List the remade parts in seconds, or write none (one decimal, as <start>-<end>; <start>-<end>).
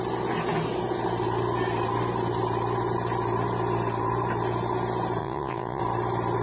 5.2-5.8